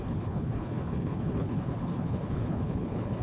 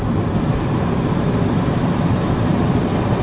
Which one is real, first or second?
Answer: second